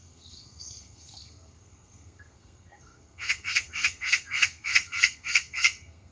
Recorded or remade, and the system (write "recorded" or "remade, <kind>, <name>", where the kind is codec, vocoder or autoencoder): remade, codec, SNAC